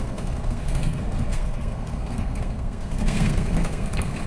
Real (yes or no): no